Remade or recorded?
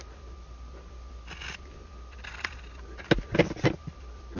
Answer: recorded